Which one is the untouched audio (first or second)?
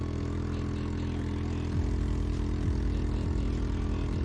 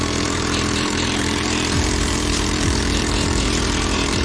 first